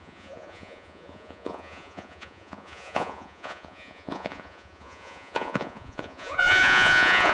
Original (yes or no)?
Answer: no